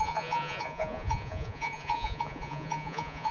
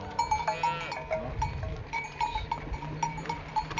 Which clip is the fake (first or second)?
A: first